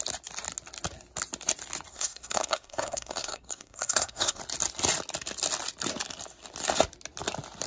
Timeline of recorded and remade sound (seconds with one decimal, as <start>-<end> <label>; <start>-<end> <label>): 0.0-1.9 recorded; 1.9-4.4 remade; 4.4-7.7 recorded